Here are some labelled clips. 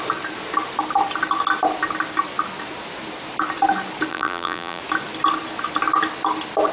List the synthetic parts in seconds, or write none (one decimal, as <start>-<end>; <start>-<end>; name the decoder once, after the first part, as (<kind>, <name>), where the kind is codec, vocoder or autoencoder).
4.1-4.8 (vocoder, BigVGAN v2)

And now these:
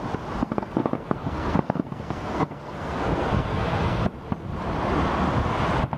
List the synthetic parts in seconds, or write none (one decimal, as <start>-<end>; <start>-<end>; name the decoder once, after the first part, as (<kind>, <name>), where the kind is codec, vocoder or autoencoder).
0.4-4.0 (codec, SNAC)

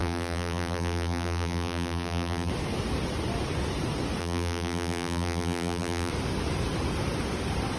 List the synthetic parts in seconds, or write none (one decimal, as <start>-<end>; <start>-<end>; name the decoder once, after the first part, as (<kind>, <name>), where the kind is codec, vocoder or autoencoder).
0.0-2.5 (vocoder, BigVGAN v2); 4.2-6.1